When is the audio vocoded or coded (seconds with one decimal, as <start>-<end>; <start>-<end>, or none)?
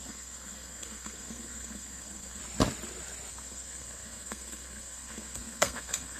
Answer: 0.0-2.4; 3.3-6.2